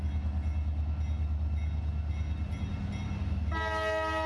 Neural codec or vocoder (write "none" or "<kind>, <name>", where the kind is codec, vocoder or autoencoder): none